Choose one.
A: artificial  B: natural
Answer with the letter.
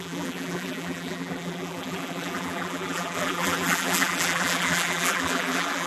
A